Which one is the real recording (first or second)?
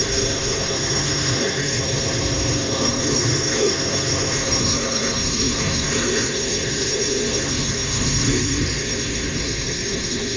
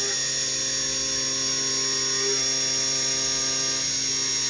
second